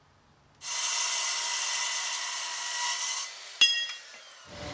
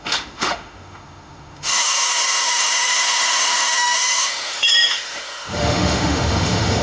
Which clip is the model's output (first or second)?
second